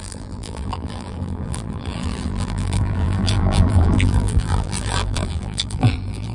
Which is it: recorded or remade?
remade